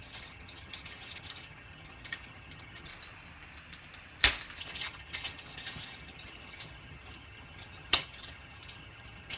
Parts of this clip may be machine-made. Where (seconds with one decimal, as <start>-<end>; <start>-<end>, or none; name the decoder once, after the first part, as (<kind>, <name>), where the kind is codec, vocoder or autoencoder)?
0.0-2.9 (vocoder, HiFi-GAN); 4.6-9.4